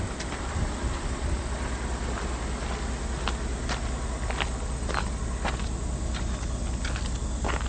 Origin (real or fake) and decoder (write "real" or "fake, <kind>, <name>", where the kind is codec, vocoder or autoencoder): real